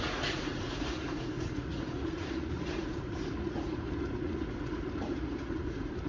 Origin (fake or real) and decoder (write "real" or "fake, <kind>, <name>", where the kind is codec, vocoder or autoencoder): fake, vocoder, Vocos